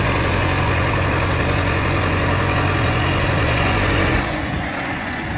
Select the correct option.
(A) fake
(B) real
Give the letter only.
A